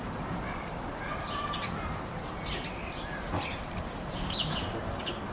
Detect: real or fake fake